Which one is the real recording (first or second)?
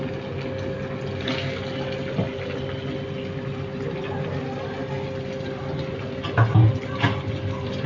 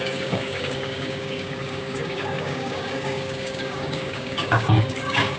first